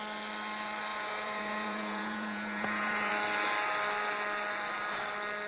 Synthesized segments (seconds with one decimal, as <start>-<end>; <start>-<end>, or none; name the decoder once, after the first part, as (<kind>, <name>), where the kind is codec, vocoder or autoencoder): 0.9-3.1 (vocoder, Vocos)